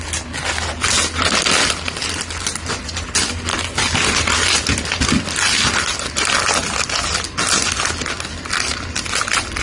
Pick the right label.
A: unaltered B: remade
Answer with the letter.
A